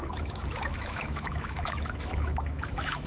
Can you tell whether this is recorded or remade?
remade